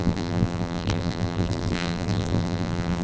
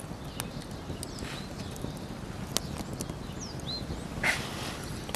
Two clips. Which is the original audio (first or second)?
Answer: second